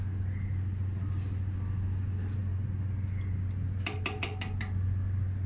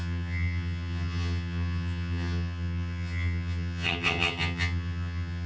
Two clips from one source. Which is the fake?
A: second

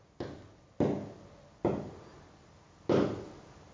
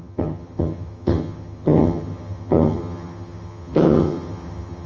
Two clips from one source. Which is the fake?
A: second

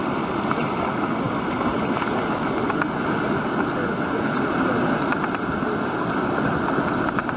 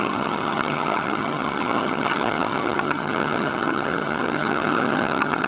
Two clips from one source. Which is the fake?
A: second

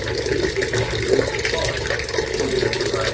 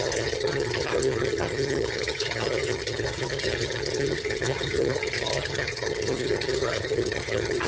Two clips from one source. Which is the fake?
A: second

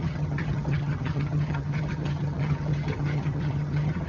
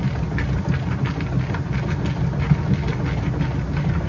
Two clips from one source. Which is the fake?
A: first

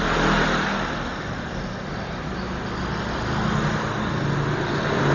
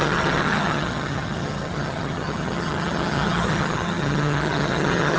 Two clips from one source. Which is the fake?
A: second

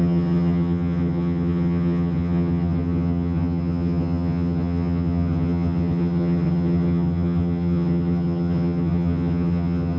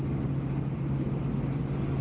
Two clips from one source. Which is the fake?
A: first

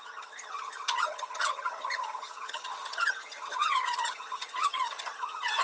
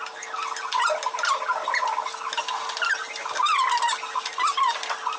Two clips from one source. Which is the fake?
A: first